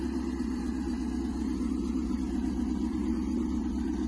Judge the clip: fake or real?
real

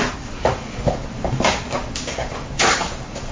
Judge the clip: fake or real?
fake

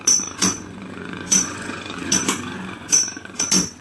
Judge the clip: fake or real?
fake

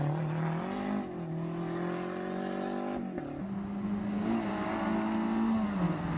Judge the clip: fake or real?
real